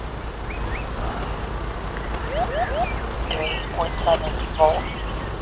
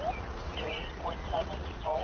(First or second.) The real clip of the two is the first